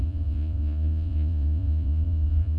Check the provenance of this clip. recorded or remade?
remade